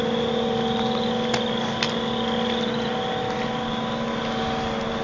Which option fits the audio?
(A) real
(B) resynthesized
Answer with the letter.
A